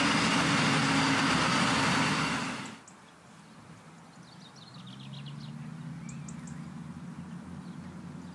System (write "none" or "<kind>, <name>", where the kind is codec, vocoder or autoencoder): none